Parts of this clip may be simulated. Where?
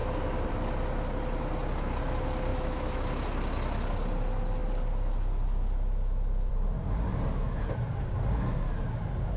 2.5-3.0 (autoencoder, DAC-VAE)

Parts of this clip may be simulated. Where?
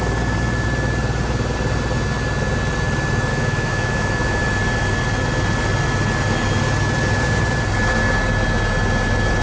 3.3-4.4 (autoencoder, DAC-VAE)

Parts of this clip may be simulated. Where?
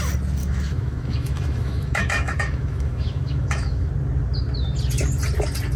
0.4-3.9 (autoencoder, DAC-VAE)